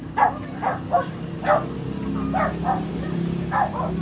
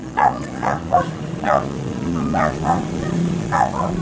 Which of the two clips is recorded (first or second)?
first